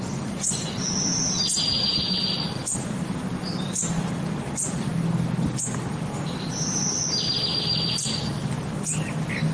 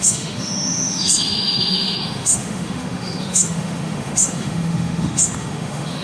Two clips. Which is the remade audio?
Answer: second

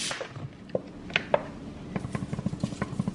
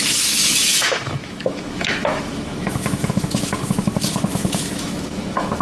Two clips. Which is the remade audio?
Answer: second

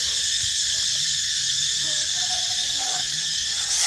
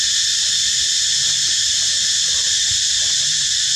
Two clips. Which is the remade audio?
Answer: first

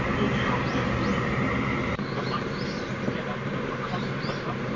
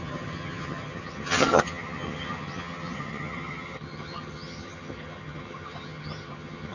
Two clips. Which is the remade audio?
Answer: second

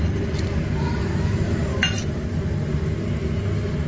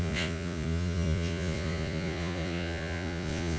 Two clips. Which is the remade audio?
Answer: second